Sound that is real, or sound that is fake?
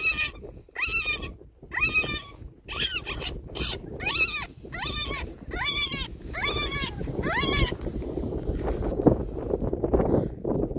real